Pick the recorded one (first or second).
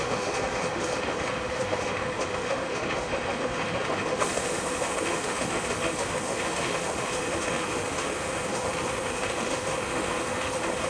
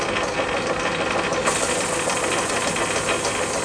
second